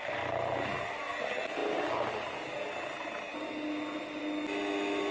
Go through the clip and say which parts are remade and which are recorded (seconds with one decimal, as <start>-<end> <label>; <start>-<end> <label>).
0.0-5.1 recorded